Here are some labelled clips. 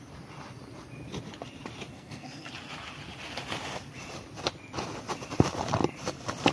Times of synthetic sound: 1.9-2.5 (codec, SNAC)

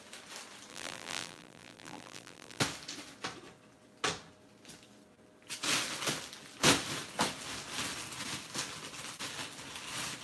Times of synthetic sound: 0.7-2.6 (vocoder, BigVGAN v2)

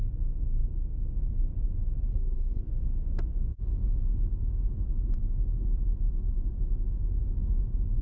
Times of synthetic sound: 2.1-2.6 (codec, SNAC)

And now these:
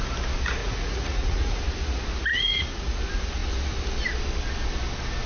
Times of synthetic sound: 0.6-1.6 (vocoder, Vocos); 2.3-3.0